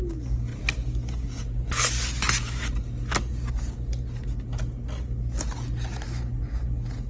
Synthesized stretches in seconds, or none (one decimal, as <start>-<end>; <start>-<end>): none